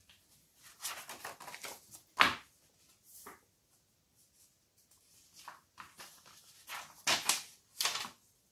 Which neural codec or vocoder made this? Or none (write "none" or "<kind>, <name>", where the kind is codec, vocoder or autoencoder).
none